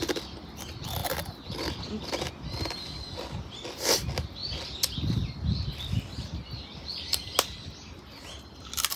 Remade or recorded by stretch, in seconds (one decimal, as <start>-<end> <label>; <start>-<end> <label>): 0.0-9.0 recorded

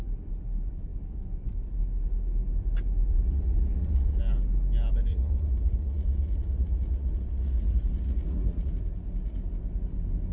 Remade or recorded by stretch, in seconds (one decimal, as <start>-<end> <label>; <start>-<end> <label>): 0.0-3.1 recorded; 3.1-4.2 remade; 4.2-5.1 recorded; 5.1-8.7 remade; 8.7-10.3 recorded

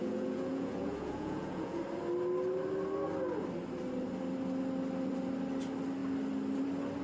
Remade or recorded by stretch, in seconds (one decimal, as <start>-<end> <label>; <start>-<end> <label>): 0.0-1.8 remade; 1.8-7.0 recorded